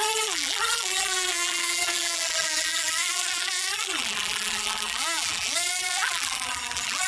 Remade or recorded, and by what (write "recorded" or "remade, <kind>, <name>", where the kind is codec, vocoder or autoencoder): remade, vocoder, BigVGAN v2